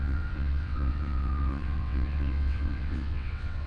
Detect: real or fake fake